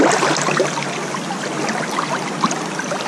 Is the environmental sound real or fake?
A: real